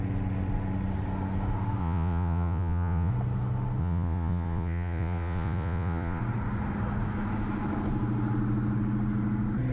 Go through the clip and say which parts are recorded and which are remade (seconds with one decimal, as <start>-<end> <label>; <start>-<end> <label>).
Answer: 0.0-1.8 recorded; 1.8-3.1 remade; 3.1-3.8 recorded; 3.8-6.2 remade; 6.2-9.7 recorded